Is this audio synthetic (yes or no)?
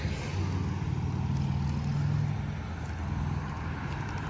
no